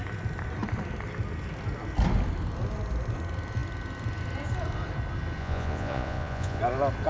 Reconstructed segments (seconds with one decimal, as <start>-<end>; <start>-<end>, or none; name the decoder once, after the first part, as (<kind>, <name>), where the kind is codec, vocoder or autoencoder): 5.4-6.6 (vocoder, Vocos)